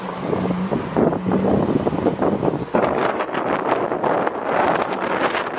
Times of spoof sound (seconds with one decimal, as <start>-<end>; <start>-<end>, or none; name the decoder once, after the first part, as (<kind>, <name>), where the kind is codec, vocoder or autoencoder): 2.6-3.4 (codec, DAC)

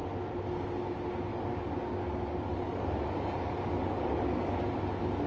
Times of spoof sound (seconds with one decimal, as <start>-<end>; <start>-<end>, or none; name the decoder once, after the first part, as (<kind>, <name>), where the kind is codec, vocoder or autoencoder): 1.3-4.5 (codec, DAC)

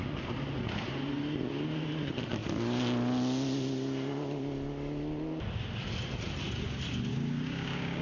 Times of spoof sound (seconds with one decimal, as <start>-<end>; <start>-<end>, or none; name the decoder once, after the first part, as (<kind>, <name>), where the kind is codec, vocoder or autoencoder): 7.1-8.0 (codec, DAC)

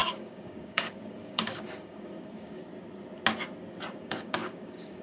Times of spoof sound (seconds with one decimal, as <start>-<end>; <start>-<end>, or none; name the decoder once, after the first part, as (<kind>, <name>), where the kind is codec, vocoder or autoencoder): 0.0-2.6 (codec, DAC); 4.0-5.0

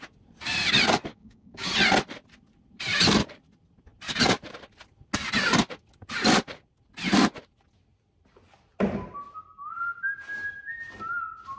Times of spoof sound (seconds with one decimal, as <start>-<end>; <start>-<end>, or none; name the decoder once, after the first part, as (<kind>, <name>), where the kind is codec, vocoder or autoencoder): 1.1-1.7 (codec, DAC)